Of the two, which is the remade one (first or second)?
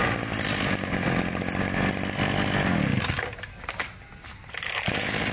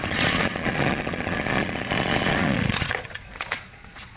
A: second